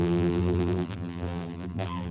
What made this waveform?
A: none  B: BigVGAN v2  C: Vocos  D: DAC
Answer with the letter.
B